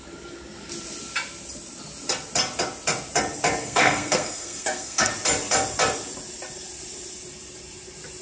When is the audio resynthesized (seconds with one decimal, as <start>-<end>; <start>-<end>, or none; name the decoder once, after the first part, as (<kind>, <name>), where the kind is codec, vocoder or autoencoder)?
3.6-5.1 (codec, SNAC)